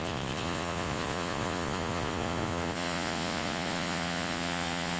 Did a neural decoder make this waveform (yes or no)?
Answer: yes